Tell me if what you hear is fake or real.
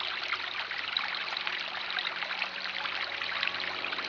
real